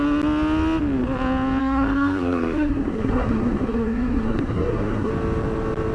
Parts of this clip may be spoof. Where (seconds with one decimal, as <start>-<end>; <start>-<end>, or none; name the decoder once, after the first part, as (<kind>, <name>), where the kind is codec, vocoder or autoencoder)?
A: 1.6-5.1 (codec, SNAC)